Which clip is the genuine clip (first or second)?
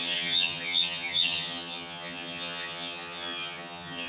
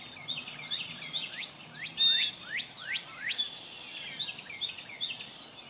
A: second